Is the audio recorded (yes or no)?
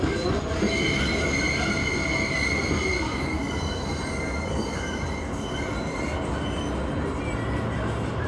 yes